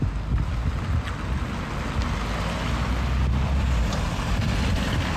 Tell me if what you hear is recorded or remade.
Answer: recorded